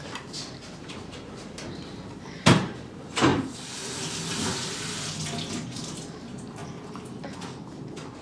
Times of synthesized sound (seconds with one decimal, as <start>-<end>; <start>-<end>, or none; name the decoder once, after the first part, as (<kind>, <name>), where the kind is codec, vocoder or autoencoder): 0.0-3.3 (vocoder, BigVGAN v2); 5.6-6.6